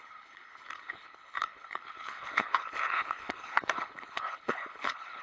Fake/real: fake